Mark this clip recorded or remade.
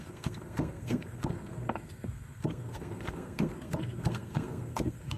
remade